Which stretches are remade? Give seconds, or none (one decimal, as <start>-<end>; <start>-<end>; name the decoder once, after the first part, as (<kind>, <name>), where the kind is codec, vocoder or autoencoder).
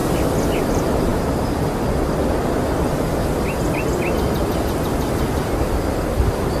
none